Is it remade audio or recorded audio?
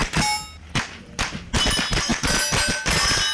recorded